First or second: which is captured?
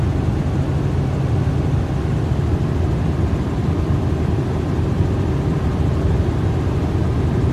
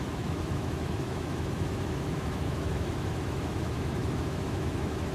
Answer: first